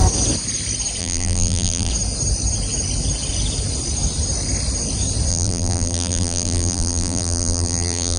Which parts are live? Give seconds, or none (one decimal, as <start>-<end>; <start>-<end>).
0.0-1.0; 1.9-5.3

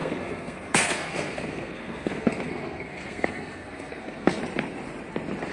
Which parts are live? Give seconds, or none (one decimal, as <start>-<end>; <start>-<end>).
4.4-5.5